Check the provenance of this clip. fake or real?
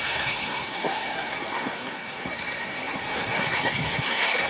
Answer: fake